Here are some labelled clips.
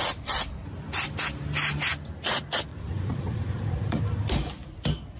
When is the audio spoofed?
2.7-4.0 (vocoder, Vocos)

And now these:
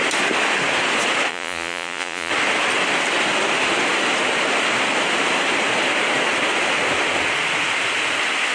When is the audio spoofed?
1.3-2.3 (vocoder, Vocos)